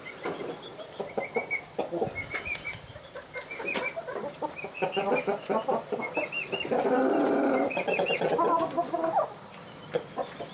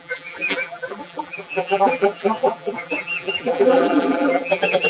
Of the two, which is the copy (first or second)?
second